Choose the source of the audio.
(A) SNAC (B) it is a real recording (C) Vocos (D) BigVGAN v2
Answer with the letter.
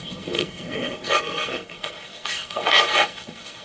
A